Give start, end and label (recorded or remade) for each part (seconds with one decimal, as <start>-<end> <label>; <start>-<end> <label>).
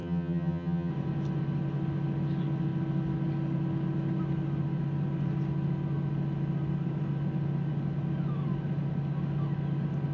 0.0-0.9 remade; 0.9-10.1 recorded